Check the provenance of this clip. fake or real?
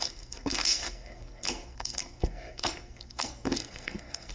fake